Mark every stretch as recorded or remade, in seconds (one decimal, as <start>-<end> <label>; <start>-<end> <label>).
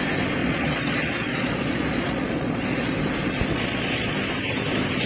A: 0.0-0.4 recorded; 0.4-2.9 remade; 2.9-3.5 recorded; 3.5-4.1 remade; 4.1-5.1 recorded